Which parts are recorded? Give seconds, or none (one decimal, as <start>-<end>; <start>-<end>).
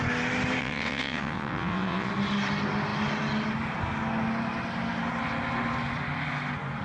0.0-0.6; 2.1-6.8